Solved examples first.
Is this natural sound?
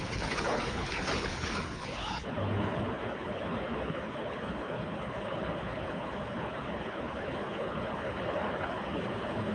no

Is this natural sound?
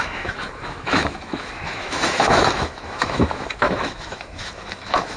no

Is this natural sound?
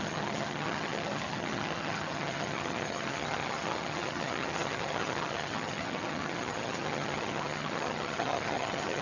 no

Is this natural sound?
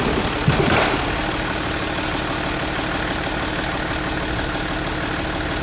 yes